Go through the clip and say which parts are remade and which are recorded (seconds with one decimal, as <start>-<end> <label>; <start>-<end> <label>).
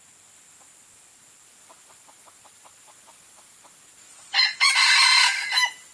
0.0-4.1 recorded; 4.1-4.7 remade; 4.7-5.9 recorded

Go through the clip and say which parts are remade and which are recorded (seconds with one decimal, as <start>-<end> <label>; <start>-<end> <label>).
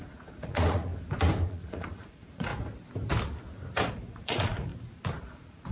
0.0-0.9 remade; 0.9-1.5 recorded; 1.5-2.5 remade; 2.5-3.9 recorded; 3.9-4.7 remade; 4.7-5.2 recorded; 5.2-5.7 remade